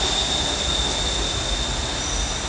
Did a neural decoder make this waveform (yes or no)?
no